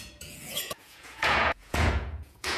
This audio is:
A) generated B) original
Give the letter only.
A